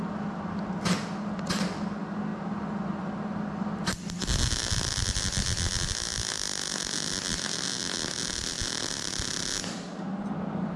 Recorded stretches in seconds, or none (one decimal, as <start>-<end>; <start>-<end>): 0.0-10.8